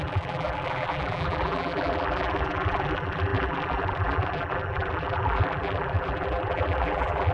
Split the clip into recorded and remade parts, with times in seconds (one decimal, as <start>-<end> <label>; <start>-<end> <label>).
0.0-7.3 remade